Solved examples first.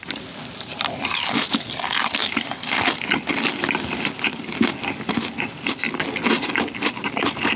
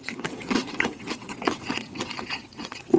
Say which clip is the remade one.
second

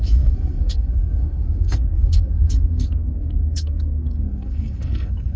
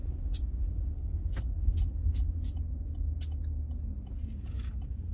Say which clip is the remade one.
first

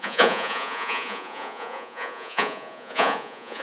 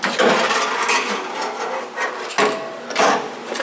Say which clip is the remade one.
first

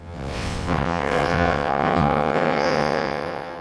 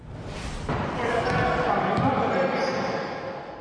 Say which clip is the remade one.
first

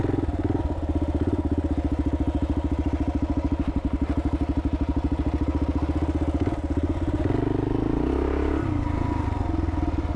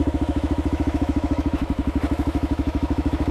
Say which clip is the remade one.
second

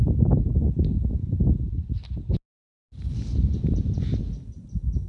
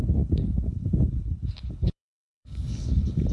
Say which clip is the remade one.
second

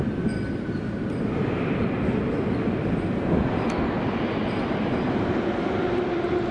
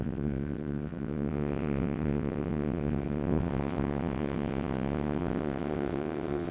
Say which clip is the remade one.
second